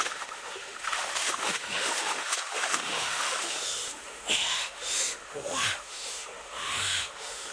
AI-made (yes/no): yes